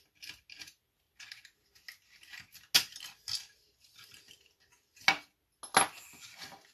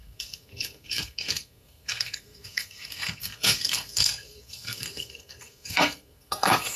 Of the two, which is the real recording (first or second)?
first